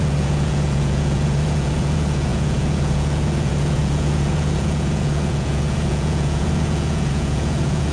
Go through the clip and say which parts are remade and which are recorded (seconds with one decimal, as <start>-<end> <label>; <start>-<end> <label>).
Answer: 0.0-7.9 remade